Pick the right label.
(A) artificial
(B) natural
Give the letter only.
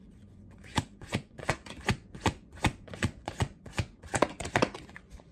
A